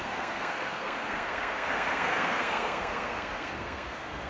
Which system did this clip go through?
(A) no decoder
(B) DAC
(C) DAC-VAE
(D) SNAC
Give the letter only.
D